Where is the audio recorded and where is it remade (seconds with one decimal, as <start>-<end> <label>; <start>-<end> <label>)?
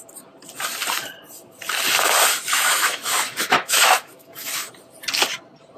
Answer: 0.0-2.3 recorded; 2.3-4.7 remade; 4.7-5.8 recorded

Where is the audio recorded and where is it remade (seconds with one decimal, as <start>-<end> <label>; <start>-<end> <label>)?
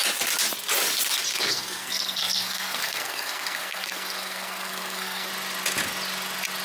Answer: 0.0-1.3 recorded; 1.3-5.3 remade; 5.3-6.6 recorded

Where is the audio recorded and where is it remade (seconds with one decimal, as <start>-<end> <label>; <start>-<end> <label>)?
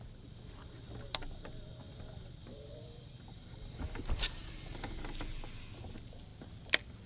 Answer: 0.0-2.4 recorded; 2.4-5.0 remade; 5.0-7.1 recorded